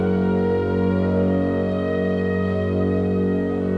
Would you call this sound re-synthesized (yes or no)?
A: no